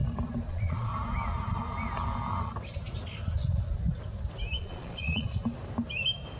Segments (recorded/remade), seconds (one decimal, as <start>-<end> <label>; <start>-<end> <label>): 0.0-0.5 recorded; 0.5-0.9 remade; 0.9-4.6 recorded; 4.6-5.4 remade; 5.4-6.4 recorded